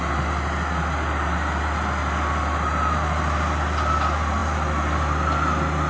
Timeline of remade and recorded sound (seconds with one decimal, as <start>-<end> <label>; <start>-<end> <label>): 0.0-5.9 recorded